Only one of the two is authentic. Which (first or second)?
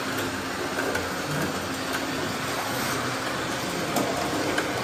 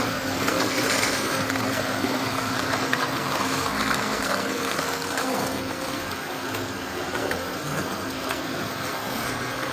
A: first